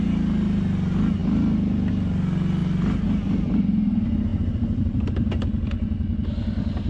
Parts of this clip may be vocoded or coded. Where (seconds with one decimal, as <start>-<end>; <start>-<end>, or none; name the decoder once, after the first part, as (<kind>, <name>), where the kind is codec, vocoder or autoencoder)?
1.2-1.9 (vocoder, BigVGAN v2); 2.6-3.6; 4.3-5.1